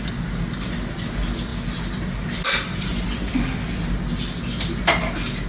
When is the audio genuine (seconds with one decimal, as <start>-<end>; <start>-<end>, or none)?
0.0-5.5